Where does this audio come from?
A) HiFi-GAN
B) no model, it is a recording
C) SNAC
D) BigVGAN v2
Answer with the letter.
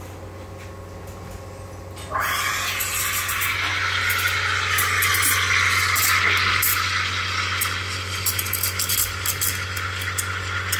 B